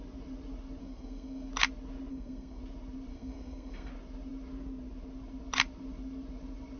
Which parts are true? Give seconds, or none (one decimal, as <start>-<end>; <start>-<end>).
0.0-0.8; 1.5-2.1; 2.6-3.1; 3.9-6.8